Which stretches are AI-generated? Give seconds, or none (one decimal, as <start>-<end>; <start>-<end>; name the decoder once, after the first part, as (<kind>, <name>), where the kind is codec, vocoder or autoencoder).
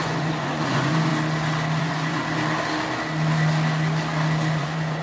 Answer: 0.0-1.1 (vocoder, Vocos); 1.8-2.2; 4.6-5.0